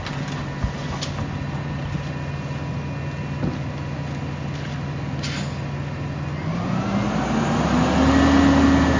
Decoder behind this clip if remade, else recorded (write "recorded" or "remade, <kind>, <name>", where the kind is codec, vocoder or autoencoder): recorded